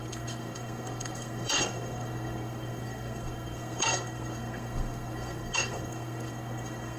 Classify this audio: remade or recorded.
remade